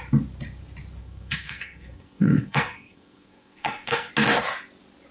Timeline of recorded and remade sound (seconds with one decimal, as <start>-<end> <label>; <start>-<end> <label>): 0.0-1.0 recorded; 1.0-4.1 remade; 4.1-5.1 recorded